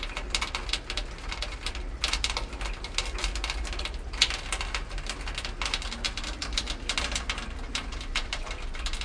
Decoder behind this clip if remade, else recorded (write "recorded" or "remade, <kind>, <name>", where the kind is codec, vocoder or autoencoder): recorded